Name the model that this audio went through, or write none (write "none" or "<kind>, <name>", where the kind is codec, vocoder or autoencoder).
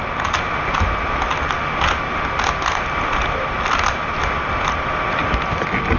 none